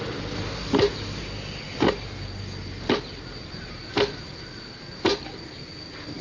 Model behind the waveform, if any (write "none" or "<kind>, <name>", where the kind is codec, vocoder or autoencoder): none